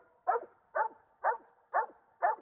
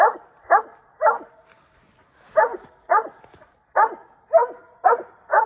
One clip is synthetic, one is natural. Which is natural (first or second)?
first